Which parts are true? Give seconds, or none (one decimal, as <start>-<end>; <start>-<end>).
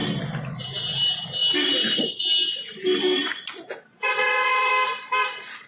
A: 0.0-3.9; 4.7-5.7